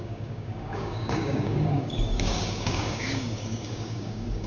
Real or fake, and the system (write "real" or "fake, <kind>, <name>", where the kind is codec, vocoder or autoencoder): fake, codec, DAC